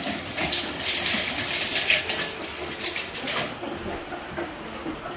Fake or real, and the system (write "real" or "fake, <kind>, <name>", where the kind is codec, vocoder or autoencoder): real